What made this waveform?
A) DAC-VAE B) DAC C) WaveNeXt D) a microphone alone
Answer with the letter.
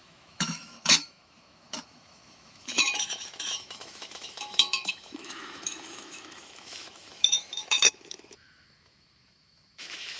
A